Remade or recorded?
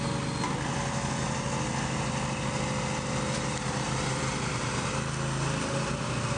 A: recorded